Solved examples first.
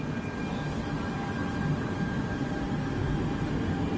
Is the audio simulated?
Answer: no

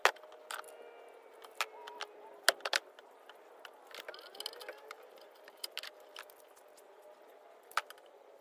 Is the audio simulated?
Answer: no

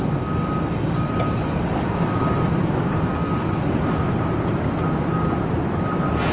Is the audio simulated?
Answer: no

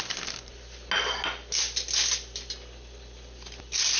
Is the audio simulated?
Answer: no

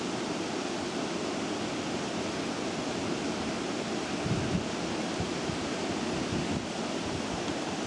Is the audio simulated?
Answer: no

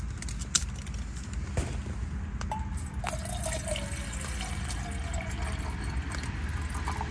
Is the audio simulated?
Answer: no